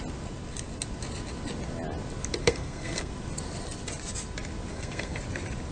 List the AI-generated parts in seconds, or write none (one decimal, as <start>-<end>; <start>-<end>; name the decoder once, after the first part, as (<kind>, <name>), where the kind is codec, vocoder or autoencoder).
2.4-3.1 (codec, SNAC); 4.7-5.2